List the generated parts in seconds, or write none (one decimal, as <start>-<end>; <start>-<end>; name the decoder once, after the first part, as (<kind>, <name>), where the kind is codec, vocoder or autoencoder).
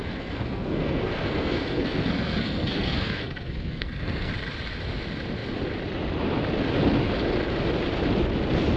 0.0-4.3 (codec, SNAC)